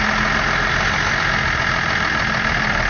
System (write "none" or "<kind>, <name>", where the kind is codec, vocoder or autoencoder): none